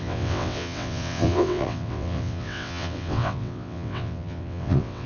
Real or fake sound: fake